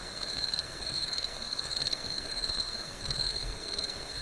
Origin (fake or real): fake